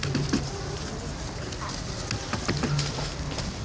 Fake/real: real